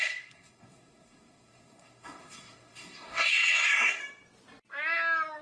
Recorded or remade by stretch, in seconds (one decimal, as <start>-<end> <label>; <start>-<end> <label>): 0.0-4.0 remade; 4.0-5.4 recorded